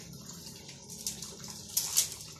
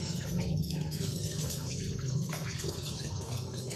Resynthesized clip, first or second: second